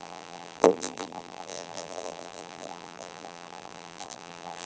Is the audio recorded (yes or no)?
no